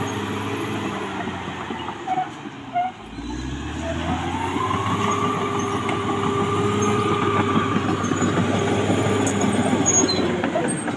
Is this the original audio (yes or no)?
yes